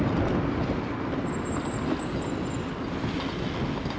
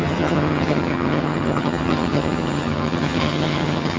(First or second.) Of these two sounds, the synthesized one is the second